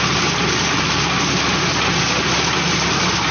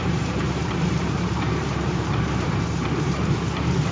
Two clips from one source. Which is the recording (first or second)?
first